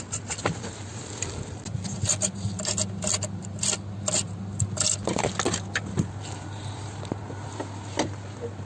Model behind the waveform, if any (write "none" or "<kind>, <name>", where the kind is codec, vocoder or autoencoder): none